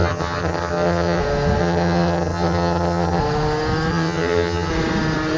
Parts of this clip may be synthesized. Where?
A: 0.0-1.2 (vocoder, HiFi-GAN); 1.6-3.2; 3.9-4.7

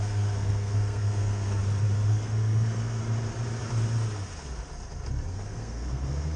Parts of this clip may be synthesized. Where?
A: 0.0-1.6 (codec, SNAC); 2.1-3.0; 5.3-6.4

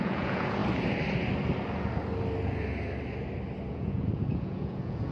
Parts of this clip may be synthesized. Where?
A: 0.0-0.6 (vocoder, Vocos); 3.7-5.1